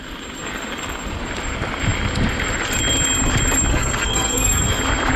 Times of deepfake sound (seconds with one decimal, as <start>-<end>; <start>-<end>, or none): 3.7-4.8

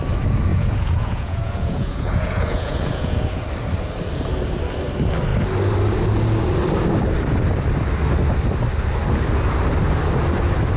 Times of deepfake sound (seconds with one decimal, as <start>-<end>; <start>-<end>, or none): 0.5-3.4

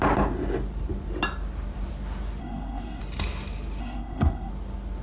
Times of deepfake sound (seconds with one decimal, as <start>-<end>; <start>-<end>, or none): 2.4-3.0; 3.8-4.5